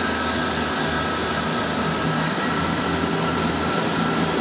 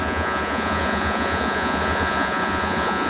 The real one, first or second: first